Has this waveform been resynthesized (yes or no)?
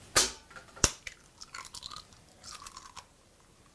yes